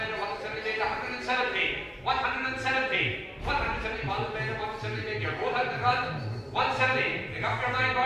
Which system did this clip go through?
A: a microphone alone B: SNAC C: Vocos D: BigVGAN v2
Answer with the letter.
A